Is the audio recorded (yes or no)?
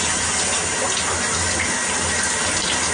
yes